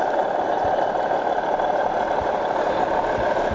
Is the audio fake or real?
real